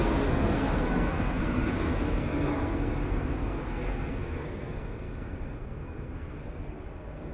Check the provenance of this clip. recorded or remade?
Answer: remade